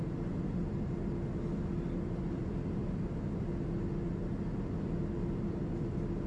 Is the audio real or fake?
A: real